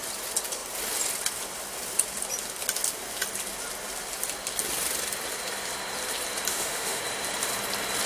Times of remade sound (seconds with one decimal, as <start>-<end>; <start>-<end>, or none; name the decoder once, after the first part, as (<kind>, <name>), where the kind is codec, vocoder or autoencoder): 6.5-7.0 (autoencoder, DAC-VAE)